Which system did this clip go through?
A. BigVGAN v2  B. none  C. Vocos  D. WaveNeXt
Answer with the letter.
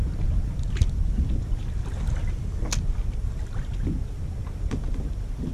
B